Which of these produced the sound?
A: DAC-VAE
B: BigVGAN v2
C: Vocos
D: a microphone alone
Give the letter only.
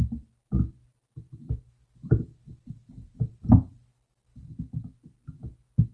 D